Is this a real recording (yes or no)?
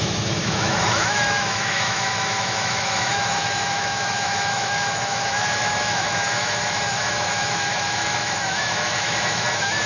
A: no